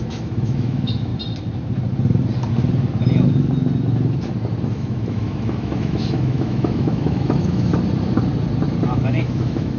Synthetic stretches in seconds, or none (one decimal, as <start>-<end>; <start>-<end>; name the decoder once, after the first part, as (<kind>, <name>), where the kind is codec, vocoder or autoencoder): 0.0-1.1 (autoencoder, DAC-VAE); 4.7-7.7; 8.9-9.8

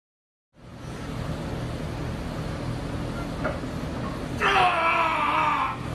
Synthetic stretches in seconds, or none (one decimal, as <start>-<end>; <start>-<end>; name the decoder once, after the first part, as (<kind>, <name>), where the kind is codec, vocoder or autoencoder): none

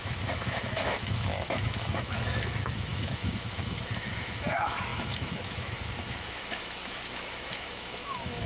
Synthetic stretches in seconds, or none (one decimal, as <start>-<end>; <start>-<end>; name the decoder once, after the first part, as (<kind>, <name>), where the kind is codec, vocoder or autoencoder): 0.0-8.5 (autoencoder, DAC-VAE)